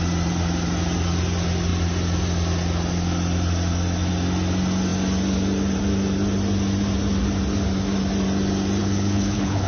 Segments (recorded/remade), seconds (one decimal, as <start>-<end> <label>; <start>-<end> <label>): 0.0-8.8 recorded; 8.8-9.7 remade